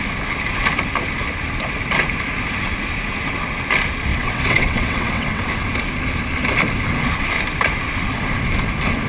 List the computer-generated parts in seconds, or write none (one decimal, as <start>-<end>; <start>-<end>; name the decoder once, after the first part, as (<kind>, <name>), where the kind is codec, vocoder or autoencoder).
4.1-5.4 (vocoder, WaveNeXt)